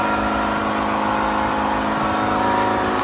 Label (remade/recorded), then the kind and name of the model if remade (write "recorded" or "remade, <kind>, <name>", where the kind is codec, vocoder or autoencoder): recorded